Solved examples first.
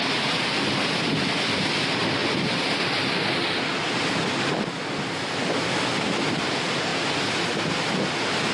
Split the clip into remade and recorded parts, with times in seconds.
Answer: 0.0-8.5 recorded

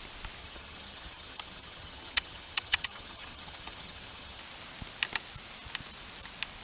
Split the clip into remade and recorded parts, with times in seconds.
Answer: 0.0-0.4 recorded; 0.4-4.4 remade; 4.4-6.6 recorded

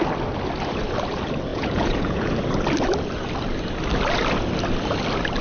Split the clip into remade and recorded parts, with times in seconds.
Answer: 0.0-1.5 recorded; 1.5-2.4 remade; 2.4-5.4 recorded

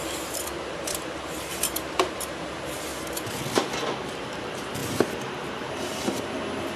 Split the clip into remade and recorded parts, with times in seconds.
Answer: 0.0-2.9 remade; 2.9-4.1 recorded; 4.1-6.8 remade